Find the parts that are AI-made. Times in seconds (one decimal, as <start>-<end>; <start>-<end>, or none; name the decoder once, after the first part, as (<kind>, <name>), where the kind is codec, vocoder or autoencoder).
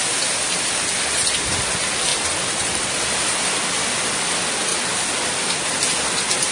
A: 4.7-5.5 (vocoder, BigVGAN v2)